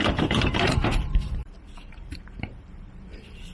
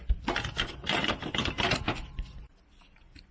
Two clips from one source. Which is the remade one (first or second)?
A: first